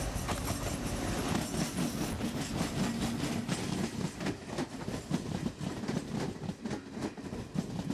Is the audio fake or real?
real